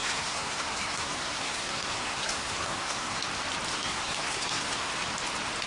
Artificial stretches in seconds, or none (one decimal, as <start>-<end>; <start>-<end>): 0.0-3.2; 3.7-4.9